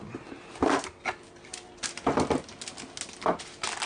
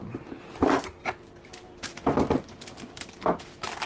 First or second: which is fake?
second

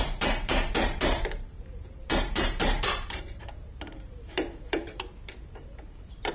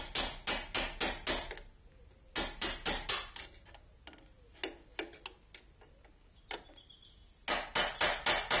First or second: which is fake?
first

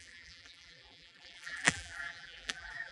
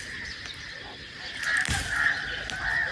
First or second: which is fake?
first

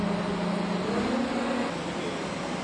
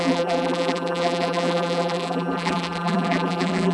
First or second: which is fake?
second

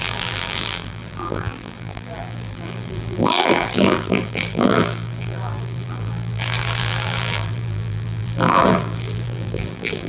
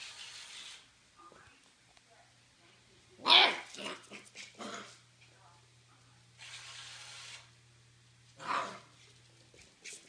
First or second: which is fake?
first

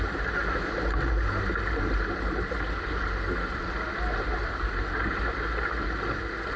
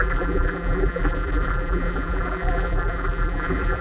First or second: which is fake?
second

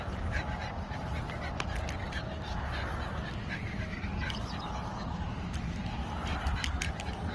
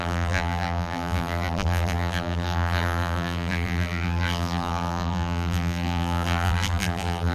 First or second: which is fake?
second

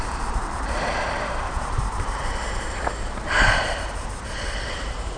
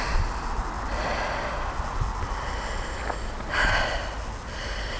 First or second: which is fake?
first